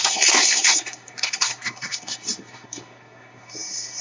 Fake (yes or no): yes